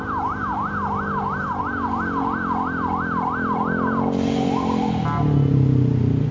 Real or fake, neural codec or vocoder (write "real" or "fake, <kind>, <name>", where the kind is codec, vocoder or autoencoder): real